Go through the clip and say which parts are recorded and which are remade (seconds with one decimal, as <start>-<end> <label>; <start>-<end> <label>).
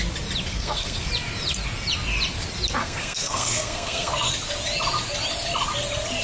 0.0-0.5 recorded; 0.5-1.1 remade; 1.1-2.8 recorded; 2.8-4.3 remade; 4.3-6.2 recorded